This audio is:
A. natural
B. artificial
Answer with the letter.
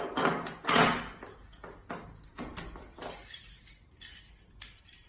A